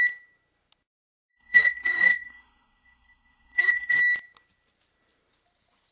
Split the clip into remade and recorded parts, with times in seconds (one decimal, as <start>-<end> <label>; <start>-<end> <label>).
0.0-1.3 recorded; 1.3-4.0 remade; 4.0-5.9 recorded